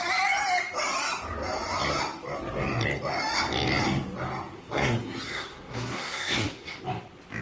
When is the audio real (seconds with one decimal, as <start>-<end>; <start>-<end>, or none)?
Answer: 0.0-4.6; 6.8-7.4